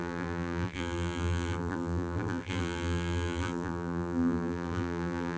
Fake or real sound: fake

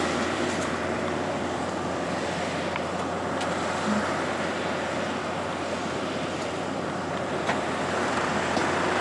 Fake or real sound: fake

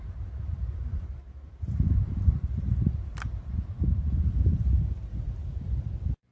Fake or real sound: fake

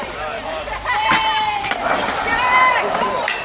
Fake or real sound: fake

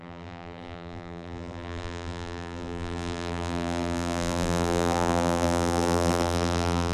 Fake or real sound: fake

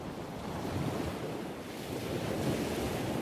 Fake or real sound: real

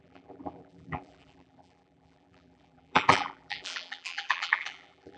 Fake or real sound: fake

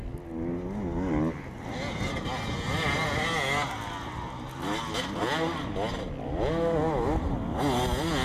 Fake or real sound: real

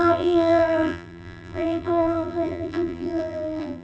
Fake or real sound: fake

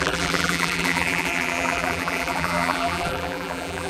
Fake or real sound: fake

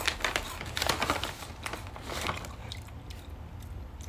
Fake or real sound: real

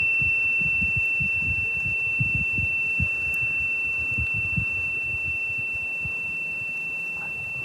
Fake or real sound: real